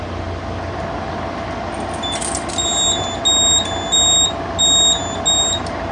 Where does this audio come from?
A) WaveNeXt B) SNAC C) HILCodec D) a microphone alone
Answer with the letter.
D